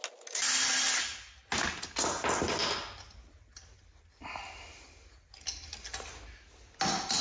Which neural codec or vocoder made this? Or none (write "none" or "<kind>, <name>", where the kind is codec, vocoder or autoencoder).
none